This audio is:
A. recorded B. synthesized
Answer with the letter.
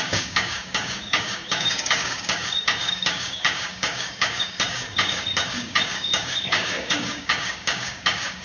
B